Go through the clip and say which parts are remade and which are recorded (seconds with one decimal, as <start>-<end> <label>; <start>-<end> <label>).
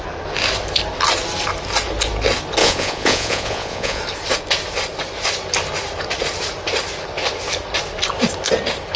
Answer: 0.0-2.6 recorded; 2.6-4.0 remade; 4.0-9.0 recorded